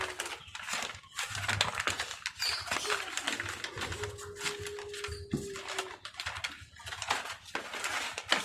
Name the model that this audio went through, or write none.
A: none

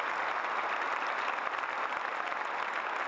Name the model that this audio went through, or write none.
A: none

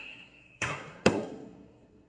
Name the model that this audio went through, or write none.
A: codec, SNAC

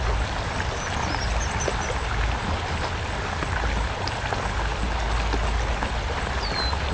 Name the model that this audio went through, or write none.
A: none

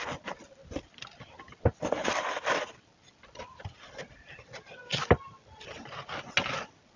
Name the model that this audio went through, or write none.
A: none